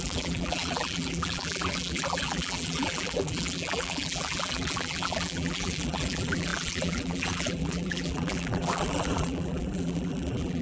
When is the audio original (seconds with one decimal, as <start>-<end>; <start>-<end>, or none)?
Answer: none